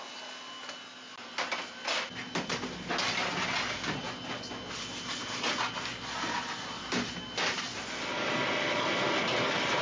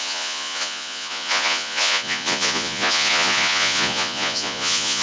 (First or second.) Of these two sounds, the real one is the first